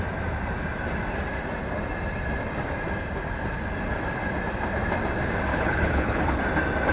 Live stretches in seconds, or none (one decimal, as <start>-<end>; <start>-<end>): 0.0-5.5; 6.4-6.9